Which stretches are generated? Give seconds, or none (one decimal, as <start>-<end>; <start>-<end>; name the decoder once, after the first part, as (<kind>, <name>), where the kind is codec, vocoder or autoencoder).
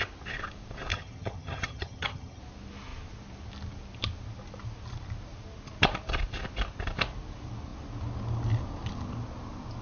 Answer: 0.9-2.4 (vocoder, HiFi-GAN)